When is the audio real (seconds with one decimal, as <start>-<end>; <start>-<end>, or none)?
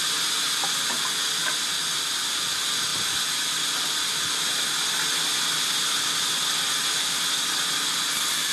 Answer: 0.0-8.5